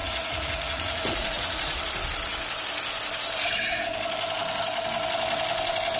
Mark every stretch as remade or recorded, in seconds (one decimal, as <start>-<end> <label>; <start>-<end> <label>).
0.0-1.8 remade; 1.8-6.0 recorded